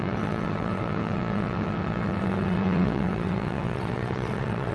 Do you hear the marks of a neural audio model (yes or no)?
yes